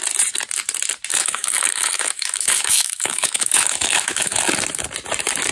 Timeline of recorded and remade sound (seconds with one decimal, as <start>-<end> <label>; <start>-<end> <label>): 0.0-1.1 recorded; 1.1-4.4 remade; 4.4-5.5 recorded